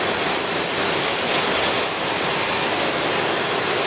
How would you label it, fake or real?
real